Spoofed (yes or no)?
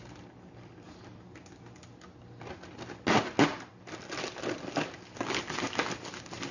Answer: no